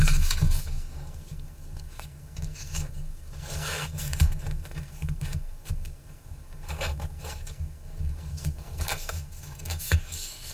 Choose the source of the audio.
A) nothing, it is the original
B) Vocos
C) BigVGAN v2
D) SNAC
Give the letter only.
D